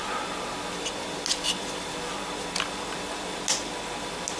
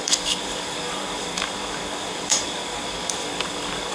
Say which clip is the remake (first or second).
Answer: second